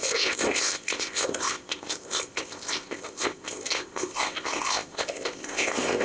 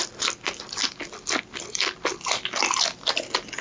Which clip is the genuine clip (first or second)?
second